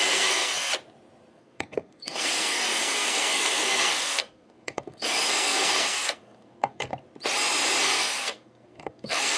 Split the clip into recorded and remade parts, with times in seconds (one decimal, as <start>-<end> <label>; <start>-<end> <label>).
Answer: 0.0-0.7 remade; 0.7-1.3 recorded; 1.3-6.9 remade; 6.9-7.8 recorded; 7.8-9.4 remade